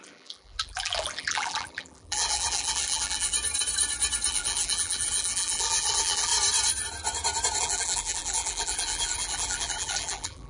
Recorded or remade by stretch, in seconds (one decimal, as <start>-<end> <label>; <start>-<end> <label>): 0.0-3.3 remade; 3.3-4.3 recorded; 4.3-6.3 remade; 6.3-7.6 recorded; 7.6-10.5 remade